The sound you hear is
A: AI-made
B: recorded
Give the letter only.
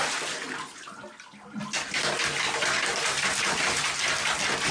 B